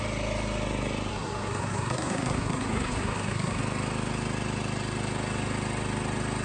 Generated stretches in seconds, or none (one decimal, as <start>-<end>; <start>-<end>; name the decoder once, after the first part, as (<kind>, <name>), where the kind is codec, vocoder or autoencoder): 1.1-3.6 (codec, SNAC)